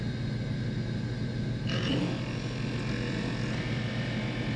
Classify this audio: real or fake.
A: real